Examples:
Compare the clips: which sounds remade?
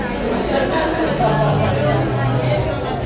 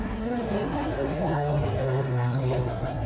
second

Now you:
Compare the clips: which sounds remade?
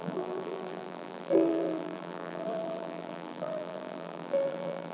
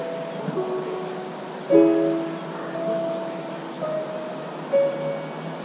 first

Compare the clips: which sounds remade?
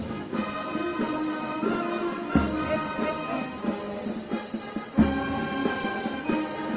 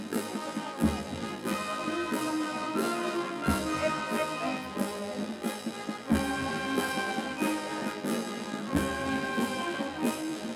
second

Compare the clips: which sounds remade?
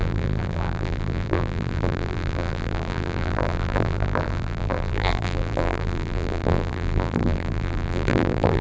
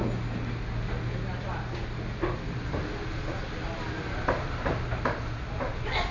first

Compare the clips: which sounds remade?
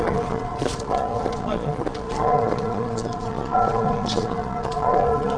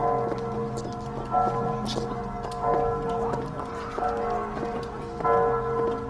first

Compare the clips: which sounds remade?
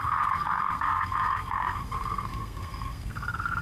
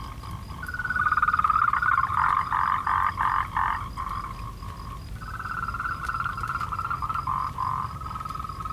first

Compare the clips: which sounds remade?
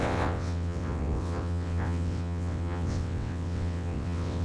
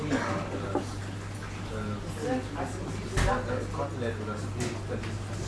first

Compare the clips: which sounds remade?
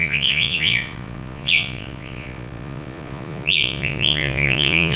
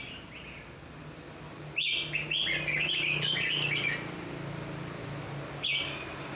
first